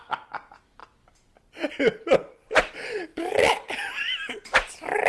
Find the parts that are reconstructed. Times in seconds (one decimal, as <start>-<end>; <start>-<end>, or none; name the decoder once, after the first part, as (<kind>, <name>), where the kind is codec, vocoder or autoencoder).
0.0-0.8 (vocoder, BigVGAN v2); 1.7-5.1

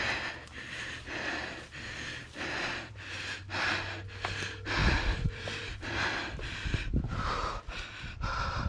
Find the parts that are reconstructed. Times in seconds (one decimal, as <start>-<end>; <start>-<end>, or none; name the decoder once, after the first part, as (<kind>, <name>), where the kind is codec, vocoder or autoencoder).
4.8-8.7 (vocoder, BigVGAN v2)